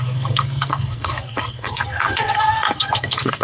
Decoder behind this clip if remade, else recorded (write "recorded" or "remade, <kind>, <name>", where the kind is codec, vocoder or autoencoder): remade, codec, SNAC